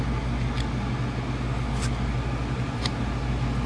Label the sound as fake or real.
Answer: real